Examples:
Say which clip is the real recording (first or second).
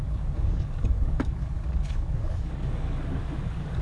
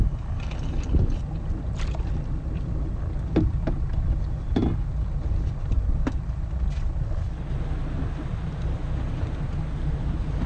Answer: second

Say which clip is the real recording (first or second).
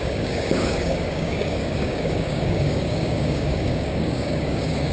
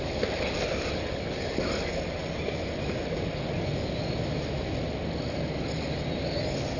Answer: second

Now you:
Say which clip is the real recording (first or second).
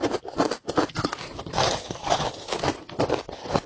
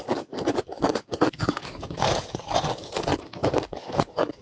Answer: first